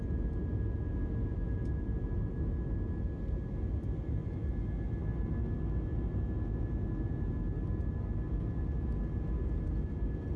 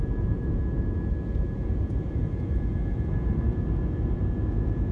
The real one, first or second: first